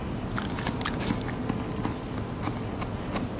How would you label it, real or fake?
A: real